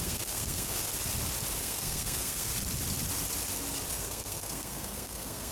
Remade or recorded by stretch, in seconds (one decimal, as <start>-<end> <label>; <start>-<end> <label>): 0.0-0.9 remade; 0.9-1.6 recorded; 1.6-2.5 remade; 2.5-3.9 recorded; 3.9-5.5 remade